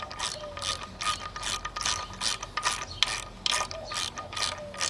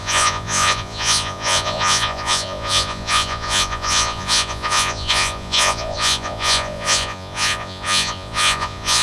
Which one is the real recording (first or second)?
first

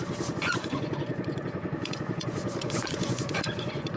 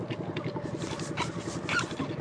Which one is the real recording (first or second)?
second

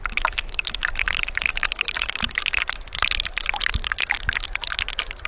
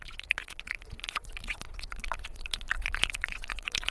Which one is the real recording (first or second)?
first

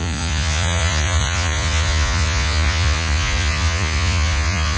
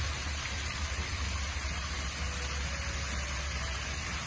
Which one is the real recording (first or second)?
second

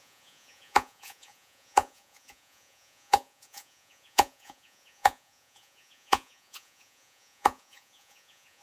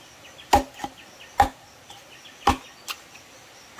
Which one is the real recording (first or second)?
second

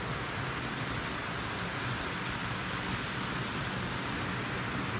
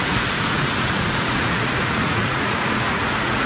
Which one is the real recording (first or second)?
first